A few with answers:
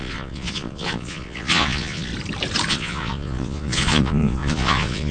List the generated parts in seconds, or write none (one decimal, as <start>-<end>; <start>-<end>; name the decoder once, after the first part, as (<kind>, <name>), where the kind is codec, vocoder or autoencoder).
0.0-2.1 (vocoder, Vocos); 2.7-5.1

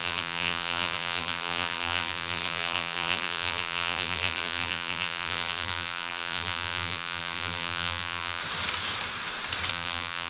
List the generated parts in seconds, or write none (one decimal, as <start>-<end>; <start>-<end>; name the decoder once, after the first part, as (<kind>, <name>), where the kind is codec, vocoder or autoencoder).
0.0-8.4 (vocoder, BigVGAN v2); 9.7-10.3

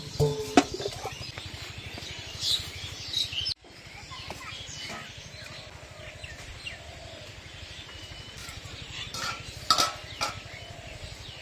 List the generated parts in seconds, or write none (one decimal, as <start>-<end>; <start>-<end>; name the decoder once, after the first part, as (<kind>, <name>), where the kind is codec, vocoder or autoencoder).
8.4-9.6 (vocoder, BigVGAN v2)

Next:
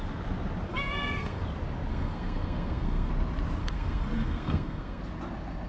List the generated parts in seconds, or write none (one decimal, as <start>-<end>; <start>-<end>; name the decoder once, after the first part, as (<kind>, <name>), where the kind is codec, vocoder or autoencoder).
0.7-1.4 (codec, SNAC); 1.9-3.1; 3.6-5.0